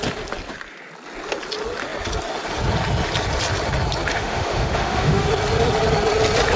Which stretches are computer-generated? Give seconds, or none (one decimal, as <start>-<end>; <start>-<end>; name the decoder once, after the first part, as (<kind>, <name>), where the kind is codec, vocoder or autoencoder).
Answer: 4.1-5.3 (autoencoder, DAC-VAE)